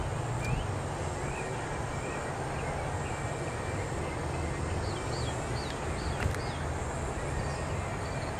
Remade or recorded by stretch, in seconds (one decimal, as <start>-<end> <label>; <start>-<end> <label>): 0.0-8.4 recorded